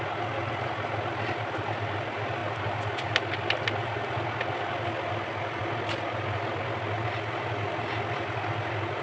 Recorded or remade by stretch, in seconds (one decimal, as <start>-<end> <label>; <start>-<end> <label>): 0.0-9.0 recorded